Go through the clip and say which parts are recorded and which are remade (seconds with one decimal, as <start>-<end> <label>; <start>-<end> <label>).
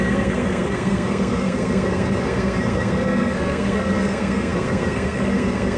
0.0-5.8 remade